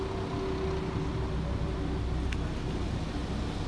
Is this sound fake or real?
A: real